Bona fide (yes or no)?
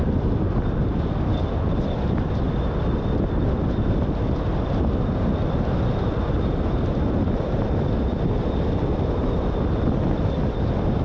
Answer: yes